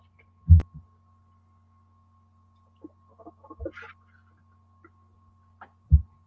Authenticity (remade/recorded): recorded